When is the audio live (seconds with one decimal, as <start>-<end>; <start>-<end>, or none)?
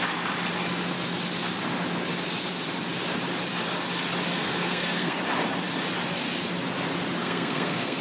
0.0-4.3; 5.2-7.2